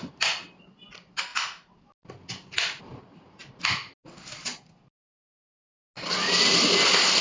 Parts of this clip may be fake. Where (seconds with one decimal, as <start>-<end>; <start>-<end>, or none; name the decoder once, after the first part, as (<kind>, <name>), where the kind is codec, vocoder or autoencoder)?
none